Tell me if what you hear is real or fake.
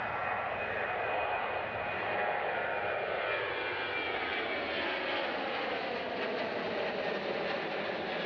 real